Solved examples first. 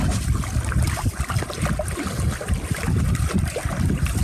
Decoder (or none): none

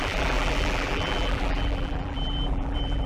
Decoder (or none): vocoder, BigVGAN v2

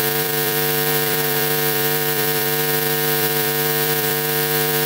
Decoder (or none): vocoder, BigVGAN v2